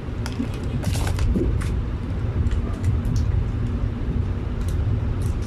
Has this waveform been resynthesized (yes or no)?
no